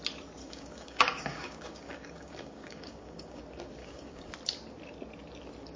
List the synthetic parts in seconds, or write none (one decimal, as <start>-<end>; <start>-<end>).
0.4-3.4; 3.8-4.3